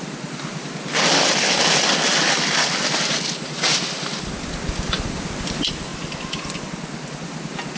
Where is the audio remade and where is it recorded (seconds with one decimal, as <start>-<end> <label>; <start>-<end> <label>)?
0.0-7.8 recorded